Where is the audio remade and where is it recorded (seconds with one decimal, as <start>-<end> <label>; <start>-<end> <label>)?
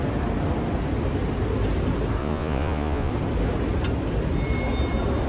0.0-2.2 recorded; 2.2-3.1 remade; 3.1-5.3 recorded